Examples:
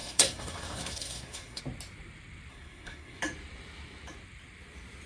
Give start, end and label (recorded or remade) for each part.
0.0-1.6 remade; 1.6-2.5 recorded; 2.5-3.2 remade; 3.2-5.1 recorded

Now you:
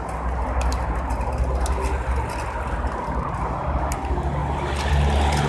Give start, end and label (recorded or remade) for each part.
0.0-5.5 recorded

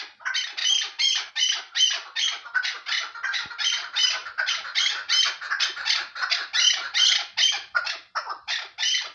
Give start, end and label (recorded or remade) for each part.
0.0-9.1 recorded

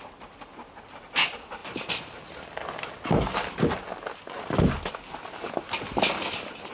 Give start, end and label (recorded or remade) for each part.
0.0-6.7 recorded

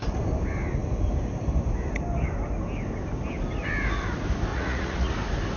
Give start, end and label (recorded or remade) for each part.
0.0-4.5 recorded; 4.5-5.1 remade; 5.1-5.6 recorded

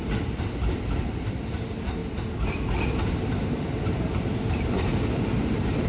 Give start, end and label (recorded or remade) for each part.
0.0-2.0 remade; 2.0-3.1 recorded; 3.1-4.9 remade; 4.9-5.5 recorded; 5.5-5.9 remade

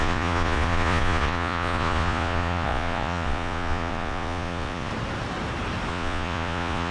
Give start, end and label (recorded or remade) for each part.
0.0-4.9 remade; 4.9-5.9 recorded; 5.9-6.9 remade

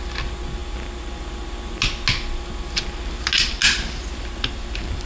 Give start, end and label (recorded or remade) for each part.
0.0-5.1 recorded